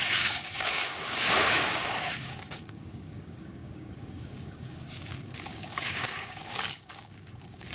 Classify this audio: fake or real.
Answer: fake